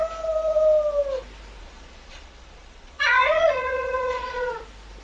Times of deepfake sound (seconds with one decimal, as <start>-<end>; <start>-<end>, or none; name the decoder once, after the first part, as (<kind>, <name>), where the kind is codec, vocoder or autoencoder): 1.6-4.6 (vocoder, Vocos)